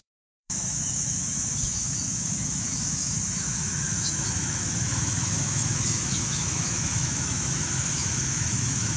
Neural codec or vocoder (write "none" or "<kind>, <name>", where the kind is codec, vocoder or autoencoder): autoencoder, DAC-VAE